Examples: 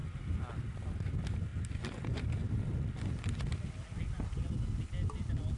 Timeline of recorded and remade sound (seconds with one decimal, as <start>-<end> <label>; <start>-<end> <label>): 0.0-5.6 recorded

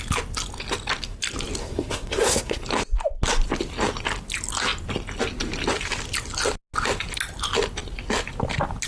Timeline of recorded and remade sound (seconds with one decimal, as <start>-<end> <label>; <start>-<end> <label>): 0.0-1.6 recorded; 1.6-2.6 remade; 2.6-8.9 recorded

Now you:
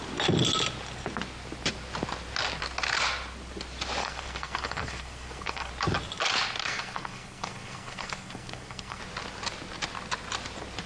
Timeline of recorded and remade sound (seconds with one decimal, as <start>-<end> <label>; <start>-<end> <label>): 0.0-4.0 recorded; 4.0-5.7 remade; 5.7-6.6 recorded; 6.6-9.0 remade; 9.0-10.9 recorded